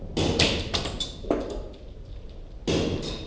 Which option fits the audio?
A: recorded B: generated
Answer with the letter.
A